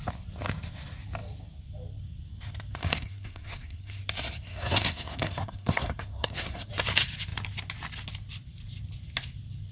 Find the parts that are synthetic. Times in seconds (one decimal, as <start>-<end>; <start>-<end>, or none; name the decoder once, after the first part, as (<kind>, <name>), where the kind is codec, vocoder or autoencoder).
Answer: 2.8-4.0 (codec, SNAC); 4.5-6.7